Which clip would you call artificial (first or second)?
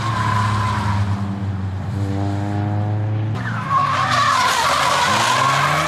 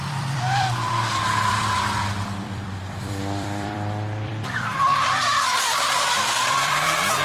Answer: second